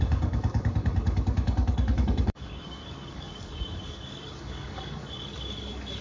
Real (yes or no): no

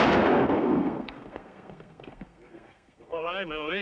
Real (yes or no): no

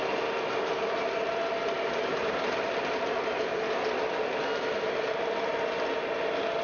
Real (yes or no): yes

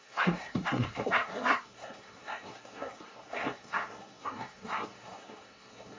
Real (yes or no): no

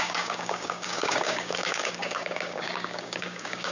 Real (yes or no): no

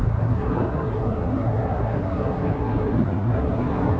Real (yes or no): no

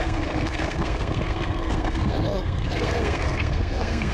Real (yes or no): no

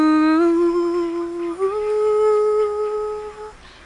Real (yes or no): yes